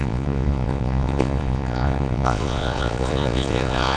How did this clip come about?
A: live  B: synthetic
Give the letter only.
B